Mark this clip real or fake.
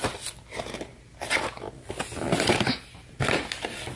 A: real